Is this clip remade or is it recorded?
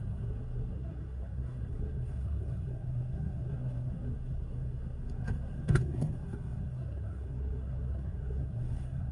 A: remade